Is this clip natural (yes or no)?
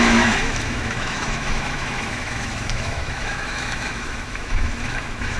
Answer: no